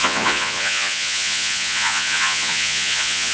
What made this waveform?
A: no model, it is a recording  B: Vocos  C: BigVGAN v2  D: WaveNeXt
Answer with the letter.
B